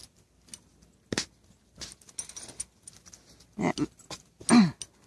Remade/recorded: recorded